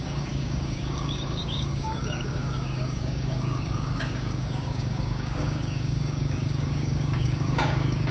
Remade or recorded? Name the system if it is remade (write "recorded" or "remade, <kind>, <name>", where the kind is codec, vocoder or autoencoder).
remade, codec, DAC